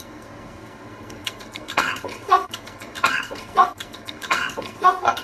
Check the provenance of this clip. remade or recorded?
remade